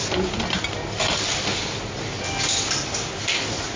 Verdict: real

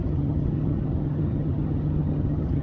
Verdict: fake